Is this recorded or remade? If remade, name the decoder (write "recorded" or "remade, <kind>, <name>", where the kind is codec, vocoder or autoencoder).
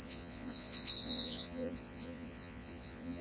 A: remade, vocoder, Vocos